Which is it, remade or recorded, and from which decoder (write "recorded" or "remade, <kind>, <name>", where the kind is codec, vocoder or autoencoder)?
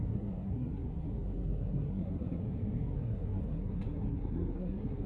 remade, codec, SNAC